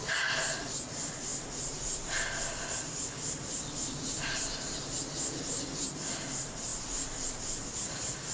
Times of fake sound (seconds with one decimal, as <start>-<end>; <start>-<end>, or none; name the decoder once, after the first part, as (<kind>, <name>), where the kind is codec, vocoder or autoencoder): none